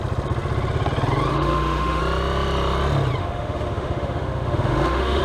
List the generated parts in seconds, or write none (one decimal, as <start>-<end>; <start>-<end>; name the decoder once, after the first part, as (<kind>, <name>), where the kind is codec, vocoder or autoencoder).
1.3-2.0 (autoencoder, DAC-VAE); 3.2-5.2